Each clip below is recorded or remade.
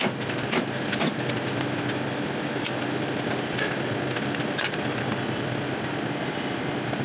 recorded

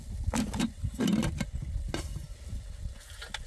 recorded